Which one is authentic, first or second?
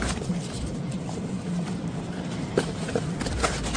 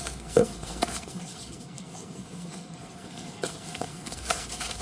first